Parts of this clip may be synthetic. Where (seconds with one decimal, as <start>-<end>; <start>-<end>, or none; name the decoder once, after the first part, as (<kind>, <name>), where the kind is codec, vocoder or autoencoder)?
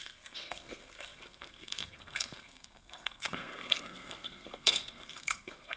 0.0-5.8 (codec, SNAC)